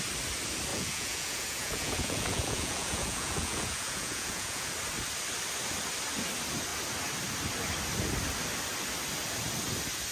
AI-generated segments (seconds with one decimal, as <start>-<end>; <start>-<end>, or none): 0.7-4.7